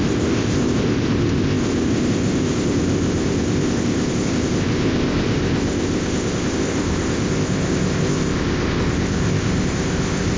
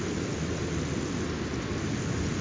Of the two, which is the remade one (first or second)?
first